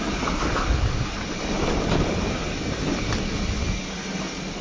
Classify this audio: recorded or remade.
recorded